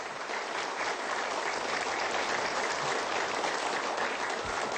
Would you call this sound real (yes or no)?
yes